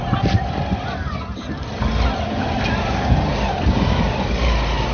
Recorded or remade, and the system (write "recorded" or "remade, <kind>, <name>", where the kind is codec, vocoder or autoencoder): recorded